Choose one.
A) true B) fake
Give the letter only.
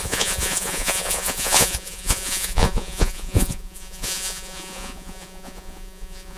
B